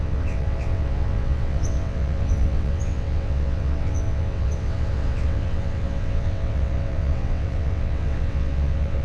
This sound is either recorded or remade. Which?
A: remade